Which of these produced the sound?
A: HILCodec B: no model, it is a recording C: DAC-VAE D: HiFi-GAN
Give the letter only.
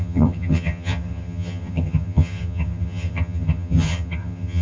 D